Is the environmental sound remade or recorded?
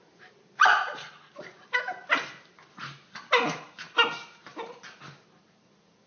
recorded